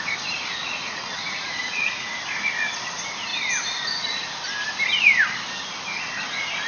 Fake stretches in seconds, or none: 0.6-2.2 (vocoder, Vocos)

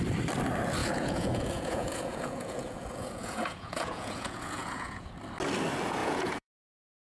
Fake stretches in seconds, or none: 0.8-5.1 (vocoder, Vocos); 6.0-7.2

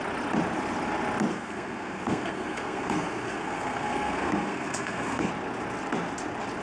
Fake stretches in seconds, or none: 1.3-5.3 (codec, SNAC)

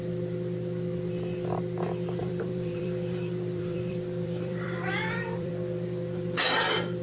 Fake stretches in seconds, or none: 2.2-5.5 (vocoder, BigVGAN v2)

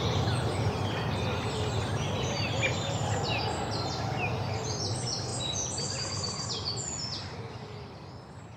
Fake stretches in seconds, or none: none

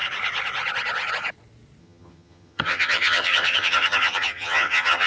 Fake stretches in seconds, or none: 1.8-5.1 (vocoder, HiFi-GAN)

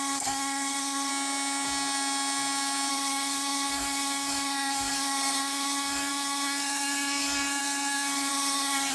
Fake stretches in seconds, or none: 0.0-1.1 (codec, SNAC); 2.9-8.9

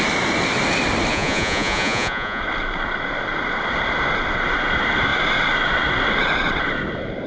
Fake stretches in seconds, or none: 1.1-2.4 (vocoder, Vocos)